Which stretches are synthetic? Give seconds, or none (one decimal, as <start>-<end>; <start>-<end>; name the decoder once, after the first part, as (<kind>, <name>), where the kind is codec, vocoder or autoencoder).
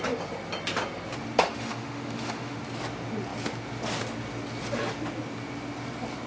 1.4-2.6 (autoencoder, DAC-VAE)